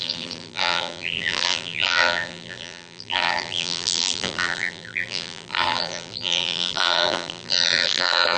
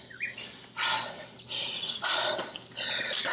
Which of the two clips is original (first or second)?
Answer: second